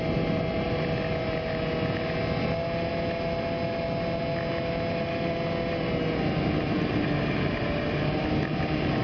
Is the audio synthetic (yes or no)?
no